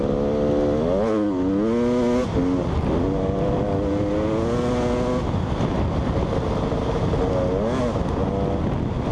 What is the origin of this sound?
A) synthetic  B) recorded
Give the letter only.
B